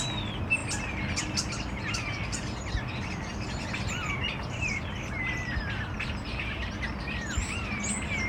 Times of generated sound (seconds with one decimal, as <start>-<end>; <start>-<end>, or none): none